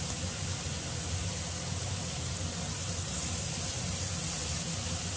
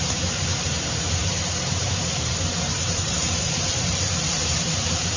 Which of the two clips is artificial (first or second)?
second